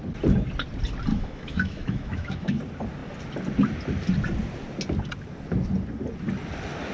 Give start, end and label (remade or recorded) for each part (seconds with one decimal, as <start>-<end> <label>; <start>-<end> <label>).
0.0-1.1 recorded; 1.1-2.6 remade; 2.6-6.9 recorded